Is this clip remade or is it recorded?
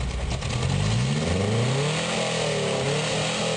recorded